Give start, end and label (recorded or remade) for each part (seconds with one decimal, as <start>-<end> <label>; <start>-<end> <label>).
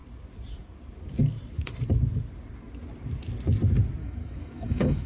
0.0-4.0 recorded; 4.0-5.1 remade